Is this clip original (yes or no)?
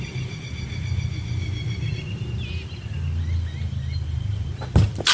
yes